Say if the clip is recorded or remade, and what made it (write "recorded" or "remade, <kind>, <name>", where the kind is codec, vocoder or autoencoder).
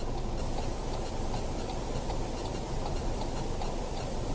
remade, vocoder, BigVGAN v2